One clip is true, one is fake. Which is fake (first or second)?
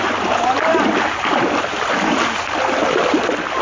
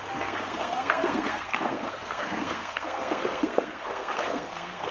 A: second